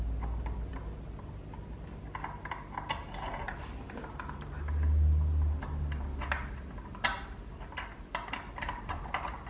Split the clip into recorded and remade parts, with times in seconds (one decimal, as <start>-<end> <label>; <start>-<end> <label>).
0.0-9.5 recorded